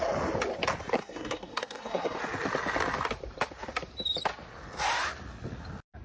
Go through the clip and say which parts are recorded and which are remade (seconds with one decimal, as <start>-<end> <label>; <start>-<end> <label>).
0.0-1.0 recorded; 1.0-2.2 remade; 2.2-6.0 recorded

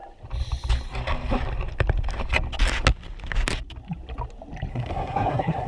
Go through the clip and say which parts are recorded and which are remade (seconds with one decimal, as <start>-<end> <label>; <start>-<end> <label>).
0.0-4.7 recorded; 4.7-5.7 remade

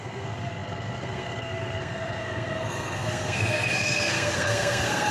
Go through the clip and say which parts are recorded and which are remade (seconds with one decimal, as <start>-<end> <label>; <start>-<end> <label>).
0.0-5.1 remade